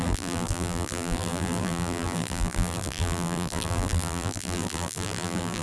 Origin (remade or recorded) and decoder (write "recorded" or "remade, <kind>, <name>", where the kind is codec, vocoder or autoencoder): remade, vocoder, BigVGAN v2